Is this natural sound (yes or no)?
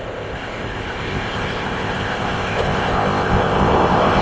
no